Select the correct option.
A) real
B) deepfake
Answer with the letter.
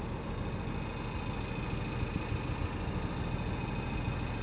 A